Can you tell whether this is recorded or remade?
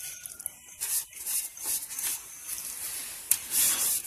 recorded